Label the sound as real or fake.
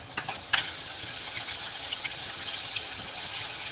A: fake